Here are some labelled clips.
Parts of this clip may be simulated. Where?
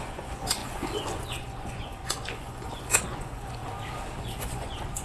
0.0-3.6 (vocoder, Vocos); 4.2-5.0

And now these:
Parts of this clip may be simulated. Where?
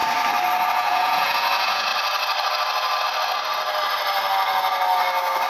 0.7-1.9 (vocoder, Vocos)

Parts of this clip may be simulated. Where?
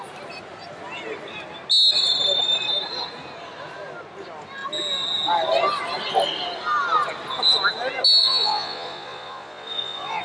8.2-10.2 (vocoder, Vocos)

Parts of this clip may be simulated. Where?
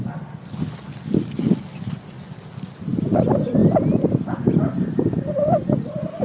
none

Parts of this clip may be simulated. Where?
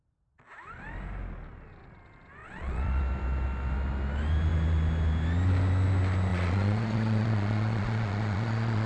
2.4-3.0 (vocoder, Vocos); 6.3-8.9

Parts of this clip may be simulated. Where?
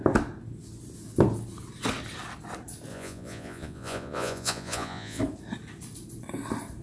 2.9-5.2 (vocoder, Vocos)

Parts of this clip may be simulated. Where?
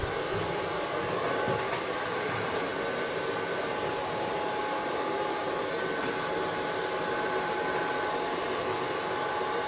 none